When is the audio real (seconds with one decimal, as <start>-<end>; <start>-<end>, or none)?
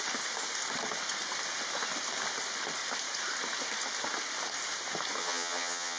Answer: 0.0-5.2